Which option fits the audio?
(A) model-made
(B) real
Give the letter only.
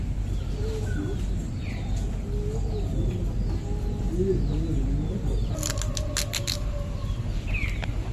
B